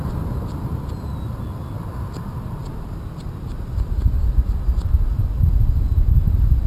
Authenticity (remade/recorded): recorded